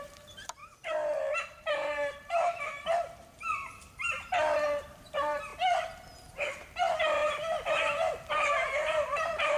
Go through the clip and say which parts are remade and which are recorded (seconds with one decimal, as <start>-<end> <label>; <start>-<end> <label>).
0.0-0.6 remade; 0.6-1.2 recorded; 1.2-5.5 remade; 5.5-6.3 recorded; 6.3-7.2 remade; 7.2-8.3 recorded; 8.3-9.6 remade